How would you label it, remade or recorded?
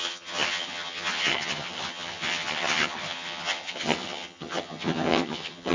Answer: remade